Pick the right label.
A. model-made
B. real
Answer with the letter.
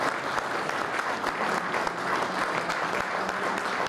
B